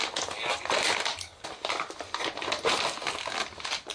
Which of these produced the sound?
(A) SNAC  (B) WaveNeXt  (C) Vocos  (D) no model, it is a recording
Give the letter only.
D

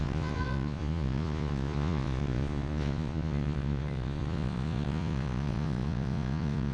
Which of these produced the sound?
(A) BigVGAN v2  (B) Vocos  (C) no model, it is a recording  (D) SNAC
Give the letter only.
B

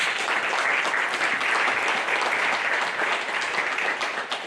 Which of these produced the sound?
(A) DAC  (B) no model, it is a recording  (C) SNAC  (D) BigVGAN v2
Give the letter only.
B